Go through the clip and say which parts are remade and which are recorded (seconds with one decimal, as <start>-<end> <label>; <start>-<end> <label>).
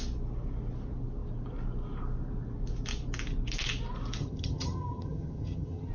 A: 0.0-4.2 recorded; 4.2-5.9 remade